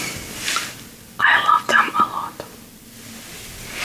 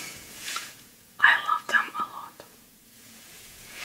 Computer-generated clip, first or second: second